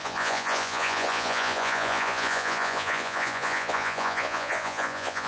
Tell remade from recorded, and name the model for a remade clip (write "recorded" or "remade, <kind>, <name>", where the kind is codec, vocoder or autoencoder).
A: remade, vocoder, Vocos